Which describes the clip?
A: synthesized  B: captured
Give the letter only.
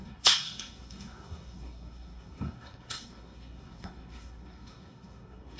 A